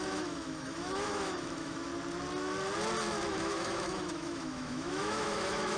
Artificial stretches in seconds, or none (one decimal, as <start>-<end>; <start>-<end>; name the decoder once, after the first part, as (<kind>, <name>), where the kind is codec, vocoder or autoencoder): 0.0-1.9 (autoencoder, DAC-VAE); 3.3-5.8